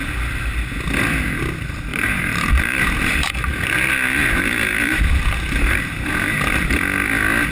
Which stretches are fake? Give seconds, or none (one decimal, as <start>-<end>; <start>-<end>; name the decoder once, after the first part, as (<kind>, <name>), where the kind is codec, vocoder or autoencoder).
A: 1.9-3.5 (vocoder, BigVGAN v2); 4.2-6.1